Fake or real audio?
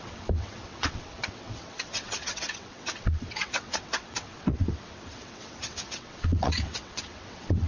fake